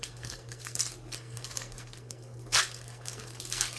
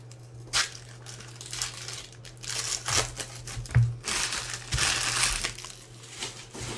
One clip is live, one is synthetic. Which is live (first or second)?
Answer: second